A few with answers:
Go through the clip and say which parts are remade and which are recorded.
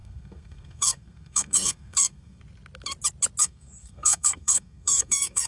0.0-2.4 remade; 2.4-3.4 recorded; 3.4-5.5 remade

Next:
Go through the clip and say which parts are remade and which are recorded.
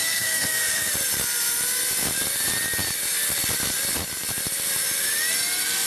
0.0-0.9 remade; 0.9-5.9 recorded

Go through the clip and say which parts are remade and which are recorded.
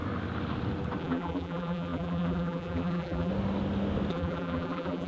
0.0-1.0 recorded; 1.0-3.3 remade; 3.3-4.1 recorded; 4.1-5.1 remade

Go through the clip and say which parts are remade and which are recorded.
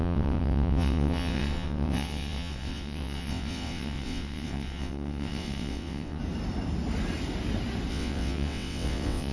0.0-6.2 remade; 6.2-7.9 recorded; 7.9-9.3 remade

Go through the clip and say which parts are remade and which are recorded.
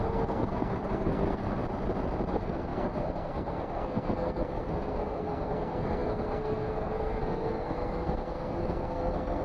0.0-1.6 remade; 1.6-2.3 recorded; 2.3-9.4 remade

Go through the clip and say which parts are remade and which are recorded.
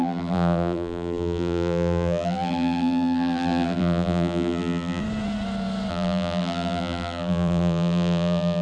0.0-5.0 remade; 5.0-5.9 recorded; 5.9-8.6 remade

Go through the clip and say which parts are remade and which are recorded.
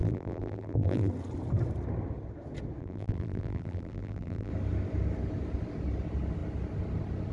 0.0-1.1 remade; 1.1-2.8 recorded; 2.8-4.5 remade; 4.5-7.3 recorded